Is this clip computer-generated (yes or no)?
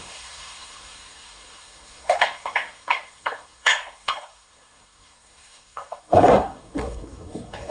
yes